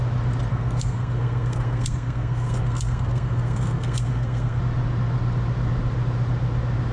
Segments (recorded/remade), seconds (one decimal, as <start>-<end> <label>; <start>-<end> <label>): 0.0-0.5 recorded; 0.5-4.6 remade; 4.6-6.9 recorded

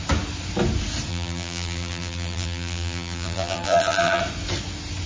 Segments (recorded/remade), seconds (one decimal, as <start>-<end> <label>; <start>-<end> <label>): 0.0-1.1 recorded; 1.1-4.2 remade; 4.2-5.1 recorded

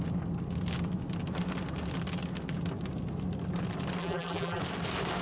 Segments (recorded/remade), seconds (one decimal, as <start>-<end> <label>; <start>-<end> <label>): 0.0-4.0 recorded; 4.0-4.6 remade; 4.6-5.2 recorded

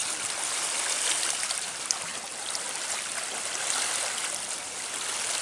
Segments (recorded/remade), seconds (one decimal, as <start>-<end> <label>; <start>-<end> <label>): 0.0-5.4 recorded